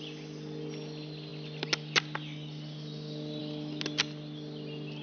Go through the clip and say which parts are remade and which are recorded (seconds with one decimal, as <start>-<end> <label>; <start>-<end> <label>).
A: 0.0-5.0 recorded